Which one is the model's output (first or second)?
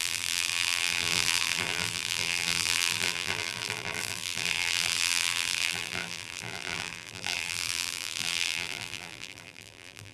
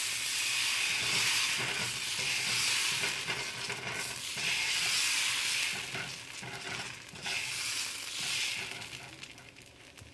first